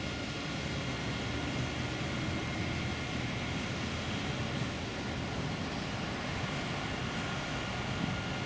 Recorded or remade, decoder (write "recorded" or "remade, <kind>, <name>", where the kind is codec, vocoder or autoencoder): recorded